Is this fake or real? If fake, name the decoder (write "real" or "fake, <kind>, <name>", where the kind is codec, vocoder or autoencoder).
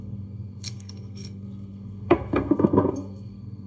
fake, codec, SNAC